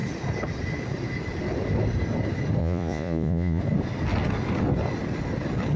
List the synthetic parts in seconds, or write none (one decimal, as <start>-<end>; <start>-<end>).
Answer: 2.6-3.6